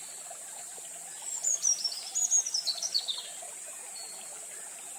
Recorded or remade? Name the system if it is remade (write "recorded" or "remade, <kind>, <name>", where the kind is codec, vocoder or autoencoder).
recorded